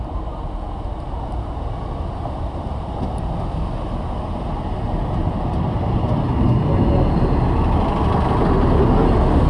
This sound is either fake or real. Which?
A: real